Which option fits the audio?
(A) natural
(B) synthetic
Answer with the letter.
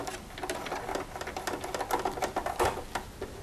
A